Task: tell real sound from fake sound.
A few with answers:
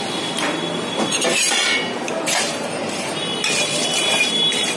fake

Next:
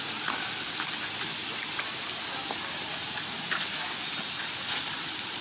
real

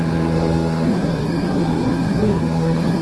fake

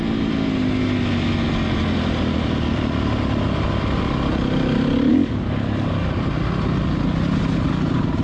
real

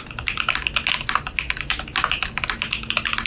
real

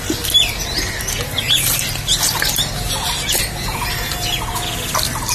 real